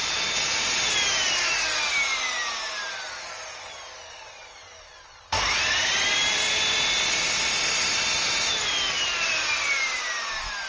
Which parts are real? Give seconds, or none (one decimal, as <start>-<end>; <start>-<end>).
0.0-10.7